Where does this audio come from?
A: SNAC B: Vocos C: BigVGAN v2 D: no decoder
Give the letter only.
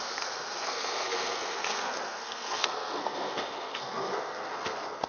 A